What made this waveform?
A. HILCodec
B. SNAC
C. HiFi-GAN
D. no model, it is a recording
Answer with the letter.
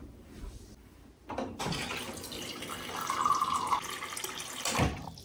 D